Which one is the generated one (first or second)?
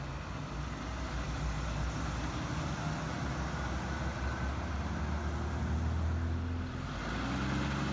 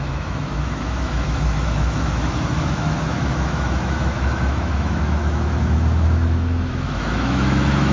second